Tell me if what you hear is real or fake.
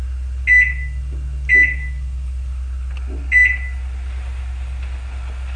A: real